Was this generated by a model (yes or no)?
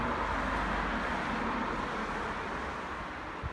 no